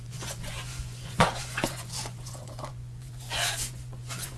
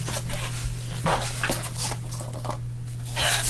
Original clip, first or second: second